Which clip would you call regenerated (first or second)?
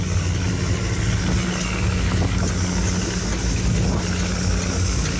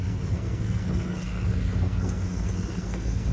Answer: second